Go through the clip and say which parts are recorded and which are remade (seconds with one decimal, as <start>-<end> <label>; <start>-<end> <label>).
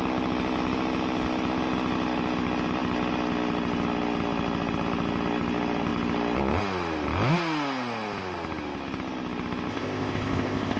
0.0-9.7 recorded; 9.7-10.8 remade